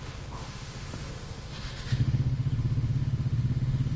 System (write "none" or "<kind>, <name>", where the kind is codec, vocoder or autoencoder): autoencoder, DAC-VAE